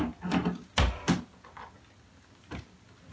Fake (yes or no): no